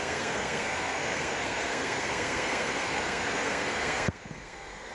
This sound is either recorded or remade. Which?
remade